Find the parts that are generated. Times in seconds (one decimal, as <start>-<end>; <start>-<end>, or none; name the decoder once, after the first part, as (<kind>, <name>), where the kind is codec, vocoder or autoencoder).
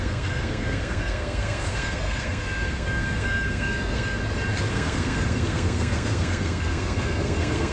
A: 0.0-4.2 (codec, SNAC); 4.7-7.7